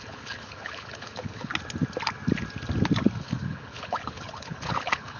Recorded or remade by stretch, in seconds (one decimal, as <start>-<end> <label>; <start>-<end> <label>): 0.0-1.5 remade; 1.5-3.2 recorded; 3.2-5.2 remade